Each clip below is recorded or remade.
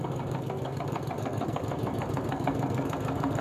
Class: remade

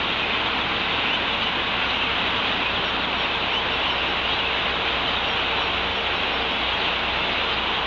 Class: recorded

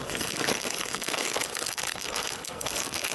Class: remade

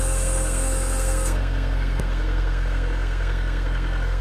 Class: remade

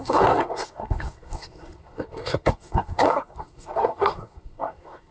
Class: remade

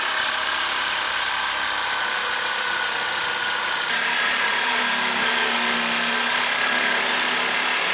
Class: recorded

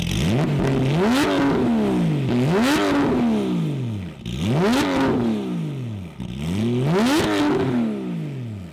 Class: recorded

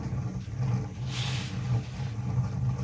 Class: recorded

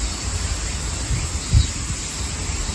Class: recorded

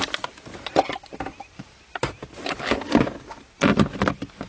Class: recorded